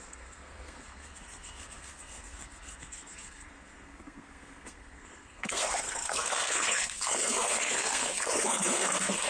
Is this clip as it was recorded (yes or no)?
no